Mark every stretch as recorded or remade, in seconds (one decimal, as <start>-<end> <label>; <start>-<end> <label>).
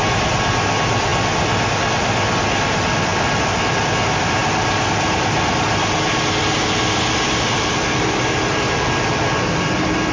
0.0-10.1 recorded